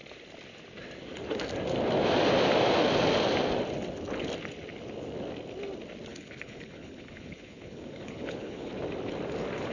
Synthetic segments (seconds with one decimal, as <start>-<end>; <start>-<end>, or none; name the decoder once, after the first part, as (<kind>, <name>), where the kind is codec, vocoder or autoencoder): 6.1-8.7 (codec, HILCodec)